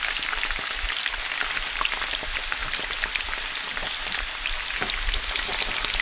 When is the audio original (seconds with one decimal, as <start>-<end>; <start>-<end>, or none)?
0.0-6.0